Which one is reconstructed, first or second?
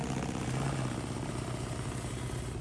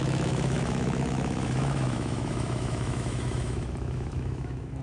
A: second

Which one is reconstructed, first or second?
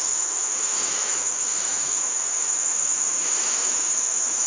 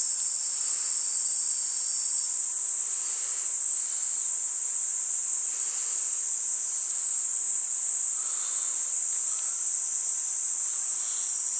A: first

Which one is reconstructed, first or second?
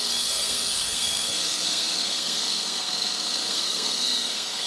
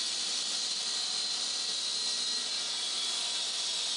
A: first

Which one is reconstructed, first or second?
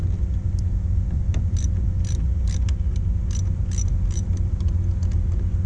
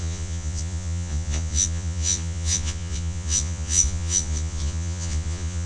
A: second